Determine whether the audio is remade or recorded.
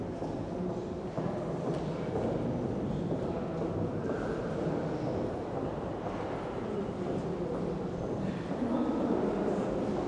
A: recorded